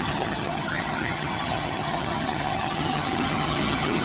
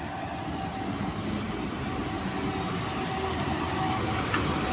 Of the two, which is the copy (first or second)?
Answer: first